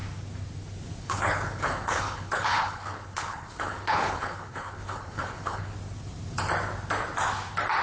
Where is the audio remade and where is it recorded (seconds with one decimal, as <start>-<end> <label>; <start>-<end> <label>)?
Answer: 0.0-1.0 recorded; 1.0-5.7 remade; 5.7-7.8 recorded